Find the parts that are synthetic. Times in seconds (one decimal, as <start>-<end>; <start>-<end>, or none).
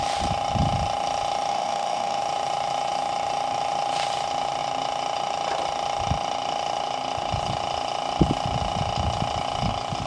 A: 1.5-2.2